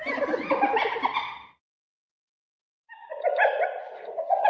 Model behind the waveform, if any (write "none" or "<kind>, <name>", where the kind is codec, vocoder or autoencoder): none